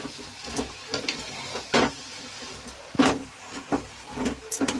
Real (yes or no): yes